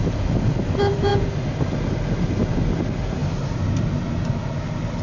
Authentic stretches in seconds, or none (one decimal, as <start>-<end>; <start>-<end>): 0.0-5.0